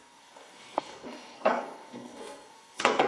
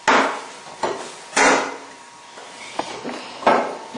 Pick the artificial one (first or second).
first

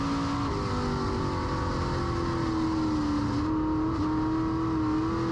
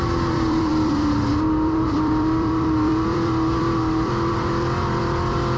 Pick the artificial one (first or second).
second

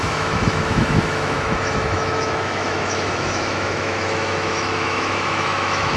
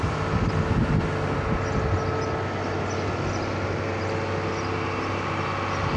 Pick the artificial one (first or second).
first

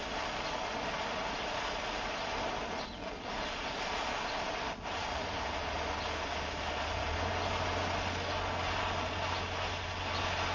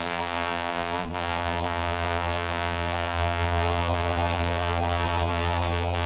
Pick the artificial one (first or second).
second